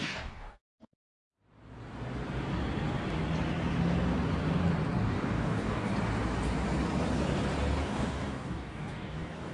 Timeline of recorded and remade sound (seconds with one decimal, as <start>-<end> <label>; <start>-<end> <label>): 0.0-1.0 remade; 1.0-5.0 recorded; 5.0-5.9 remade; 5.9-7.8 recorded; 7.8-9.5 remade